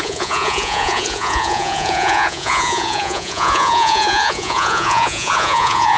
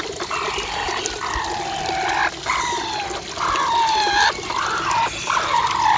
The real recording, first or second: second